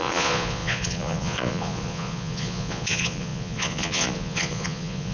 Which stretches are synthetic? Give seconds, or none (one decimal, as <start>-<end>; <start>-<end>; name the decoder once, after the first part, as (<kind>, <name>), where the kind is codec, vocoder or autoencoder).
0.0-5.1 (vocoder, Vocos)